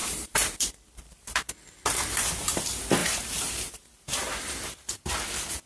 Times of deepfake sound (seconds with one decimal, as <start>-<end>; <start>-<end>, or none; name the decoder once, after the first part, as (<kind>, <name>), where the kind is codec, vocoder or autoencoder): 0.0-1.5 (vocoder, BigVGAN v2); 3.0-5.0